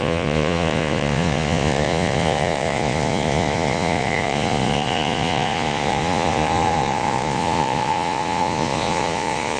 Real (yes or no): no